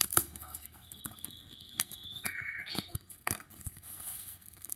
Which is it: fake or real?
fake